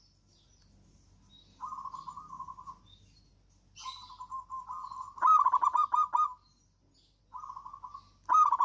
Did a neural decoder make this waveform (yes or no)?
no